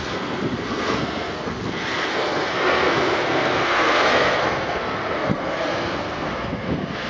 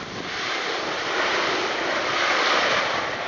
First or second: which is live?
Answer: second